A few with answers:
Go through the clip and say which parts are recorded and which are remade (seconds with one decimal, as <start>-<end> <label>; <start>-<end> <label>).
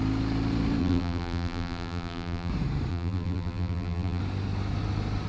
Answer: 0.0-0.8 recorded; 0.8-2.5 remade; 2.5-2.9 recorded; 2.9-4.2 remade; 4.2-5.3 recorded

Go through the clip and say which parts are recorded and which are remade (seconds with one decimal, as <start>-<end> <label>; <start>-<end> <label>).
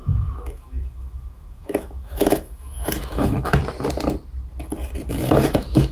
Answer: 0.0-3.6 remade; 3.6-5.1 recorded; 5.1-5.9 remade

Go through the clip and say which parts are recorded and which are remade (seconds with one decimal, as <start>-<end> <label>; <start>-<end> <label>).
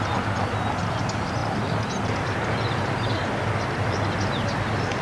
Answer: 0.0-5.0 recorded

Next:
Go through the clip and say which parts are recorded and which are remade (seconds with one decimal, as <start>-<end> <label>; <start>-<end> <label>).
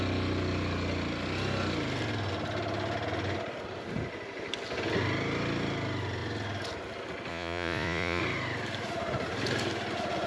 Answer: 0.0-7.3 recorded; 7.3-8.2 remade; 8.2-10.3 recorded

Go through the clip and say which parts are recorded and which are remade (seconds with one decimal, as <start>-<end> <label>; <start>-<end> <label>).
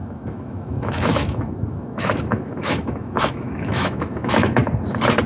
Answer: 0.0-4.6 remade; 4.6-5.3 recorded